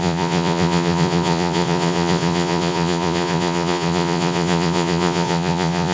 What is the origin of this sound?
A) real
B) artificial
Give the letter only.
B